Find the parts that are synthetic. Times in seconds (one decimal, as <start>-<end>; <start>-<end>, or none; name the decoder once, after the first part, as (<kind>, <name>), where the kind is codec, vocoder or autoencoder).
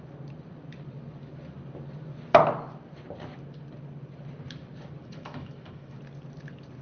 5.0-6.0 (autoencoder, DAC-VAE)